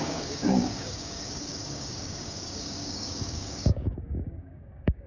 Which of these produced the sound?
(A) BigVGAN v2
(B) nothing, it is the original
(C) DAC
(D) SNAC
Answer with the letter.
C